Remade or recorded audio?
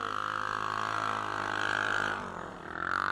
recorded